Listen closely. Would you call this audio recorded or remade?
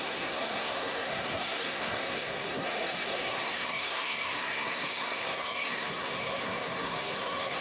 remade